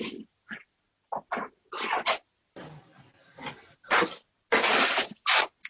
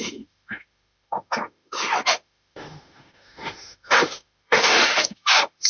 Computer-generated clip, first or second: second